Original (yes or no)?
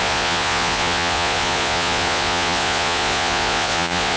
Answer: no